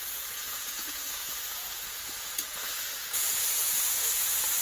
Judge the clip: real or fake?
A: fake